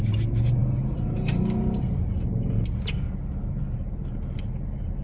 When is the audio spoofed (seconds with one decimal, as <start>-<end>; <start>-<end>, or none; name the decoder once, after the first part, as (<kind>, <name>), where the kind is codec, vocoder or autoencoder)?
none